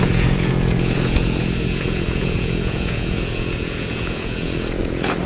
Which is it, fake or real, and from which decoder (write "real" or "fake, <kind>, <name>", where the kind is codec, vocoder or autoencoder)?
fake, vocoder, Vocos